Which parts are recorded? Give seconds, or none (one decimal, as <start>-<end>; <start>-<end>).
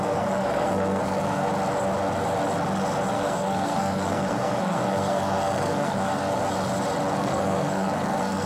1.5-3.1; 6.4-7.1